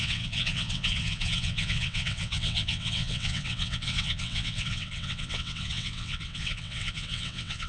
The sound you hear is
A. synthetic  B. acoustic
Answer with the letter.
A